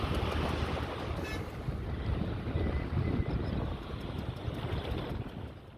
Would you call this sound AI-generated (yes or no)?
no